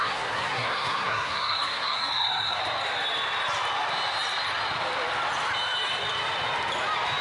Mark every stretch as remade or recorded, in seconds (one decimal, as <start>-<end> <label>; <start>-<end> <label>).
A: 0.0-2.6 remade; 2.6-7.2 recorded